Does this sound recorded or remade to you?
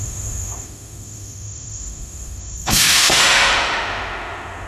remade